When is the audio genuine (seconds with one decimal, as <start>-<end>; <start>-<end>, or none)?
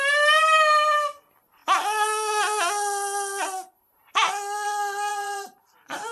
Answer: 0.0-5.1